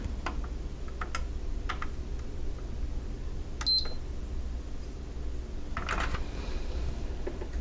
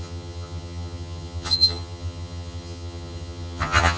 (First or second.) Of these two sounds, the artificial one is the second